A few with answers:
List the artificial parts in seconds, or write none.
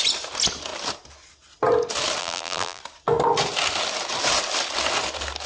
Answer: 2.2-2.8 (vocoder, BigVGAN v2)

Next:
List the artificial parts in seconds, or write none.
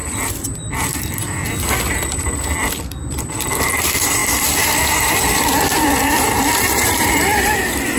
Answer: 0.0-1.4 (vocoder, BigVGAN v2); 3.8-8.0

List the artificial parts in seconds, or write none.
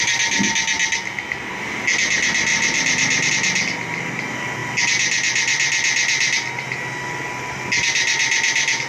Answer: 2.5-3.3 (vocoder, BigVGAN v2)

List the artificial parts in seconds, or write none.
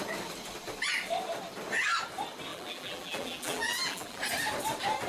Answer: 2.5-4.2 (vocoder, BigVGAN v2)